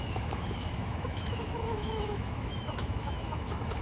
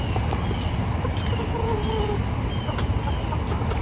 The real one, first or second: second